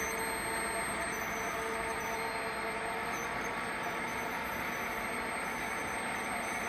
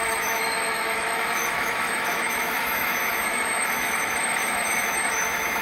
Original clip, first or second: first